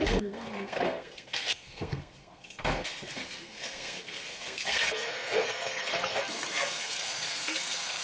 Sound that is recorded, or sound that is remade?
remade